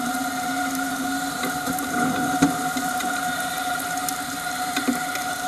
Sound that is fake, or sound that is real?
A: fake